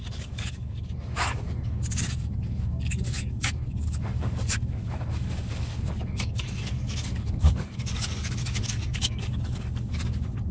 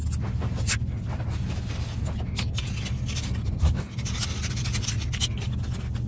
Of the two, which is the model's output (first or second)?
first